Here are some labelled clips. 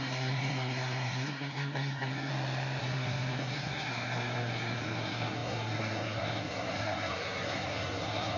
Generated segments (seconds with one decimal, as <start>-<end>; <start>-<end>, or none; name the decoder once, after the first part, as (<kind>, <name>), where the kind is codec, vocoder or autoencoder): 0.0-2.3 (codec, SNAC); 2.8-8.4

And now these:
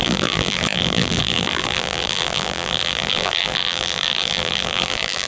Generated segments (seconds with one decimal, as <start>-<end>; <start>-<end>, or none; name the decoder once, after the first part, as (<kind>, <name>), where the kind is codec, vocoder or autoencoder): 0.0-5.3 (vocoder, BigVGAN v2)

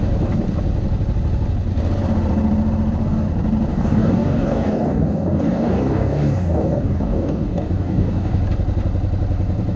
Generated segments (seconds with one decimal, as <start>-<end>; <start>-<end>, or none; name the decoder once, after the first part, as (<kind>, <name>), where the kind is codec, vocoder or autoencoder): 3.7-8.4 (codec, DAC)